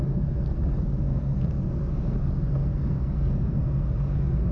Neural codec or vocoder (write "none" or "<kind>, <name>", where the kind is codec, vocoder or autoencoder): codec, SNAC